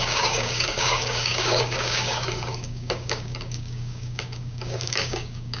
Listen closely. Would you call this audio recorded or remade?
remade